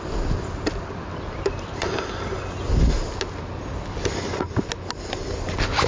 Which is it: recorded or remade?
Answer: recorded